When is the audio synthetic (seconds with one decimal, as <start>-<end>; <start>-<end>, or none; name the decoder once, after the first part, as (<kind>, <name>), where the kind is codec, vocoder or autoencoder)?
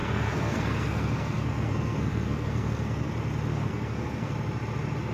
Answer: 0.0-3.1 (codec, SNAC); 3.5-4.3